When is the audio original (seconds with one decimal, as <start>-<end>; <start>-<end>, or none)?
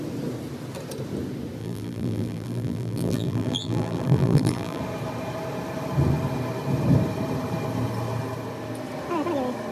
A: 0.0-1.6; 4.8-9.7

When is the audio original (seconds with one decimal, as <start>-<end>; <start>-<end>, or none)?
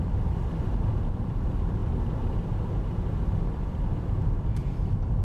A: 1.8-3.2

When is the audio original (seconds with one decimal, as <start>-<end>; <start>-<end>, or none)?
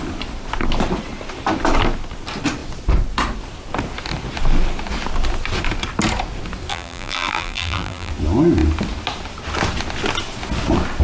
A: 0.0-6.7; 8.1-11.0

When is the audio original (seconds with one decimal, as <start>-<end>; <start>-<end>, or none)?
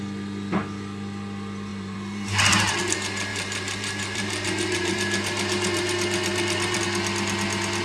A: 0.0-1.7; 2.8-3.3; 6.8-7.8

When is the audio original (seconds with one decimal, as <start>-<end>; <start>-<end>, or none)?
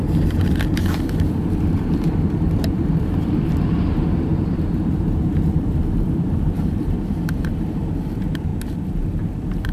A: 8.5-9.0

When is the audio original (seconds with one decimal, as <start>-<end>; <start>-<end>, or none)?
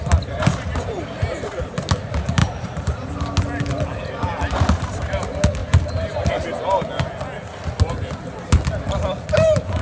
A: 0.0-2.4; 3.1-5.6; 6.3-9.8